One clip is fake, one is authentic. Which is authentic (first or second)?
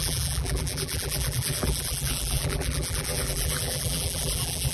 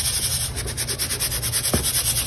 second